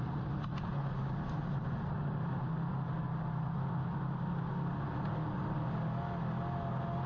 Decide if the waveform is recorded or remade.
recorded